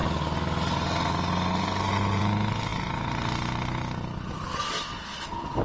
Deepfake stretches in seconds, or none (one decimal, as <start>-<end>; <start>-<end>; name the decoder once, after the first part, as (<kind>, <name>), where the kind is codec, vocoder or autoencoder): none